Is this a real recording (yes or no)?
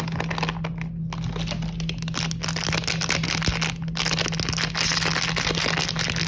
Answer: yes